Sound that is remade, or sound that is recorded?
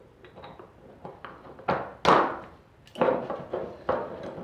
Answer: recorded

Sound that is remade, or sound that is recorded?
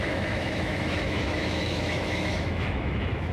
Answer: remade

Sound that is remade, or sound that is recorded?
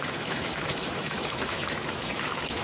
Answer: remade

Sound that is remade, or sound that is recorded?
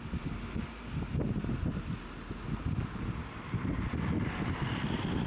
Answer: recorded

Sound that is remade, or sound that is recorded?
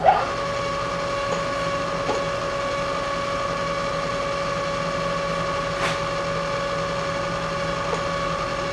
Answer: recorded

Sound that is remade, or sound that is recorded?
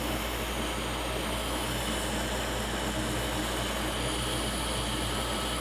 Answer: recorded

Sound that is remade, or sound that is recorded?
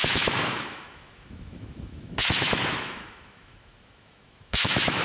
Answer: remade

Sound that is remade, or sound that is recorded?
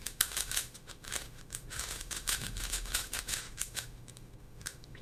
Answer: remade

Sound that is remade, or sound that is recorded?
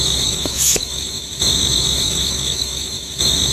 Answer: remade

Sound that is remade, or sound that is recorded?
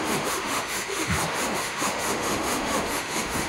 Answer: remade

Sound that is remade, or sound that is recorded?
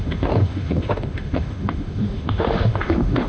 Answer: remade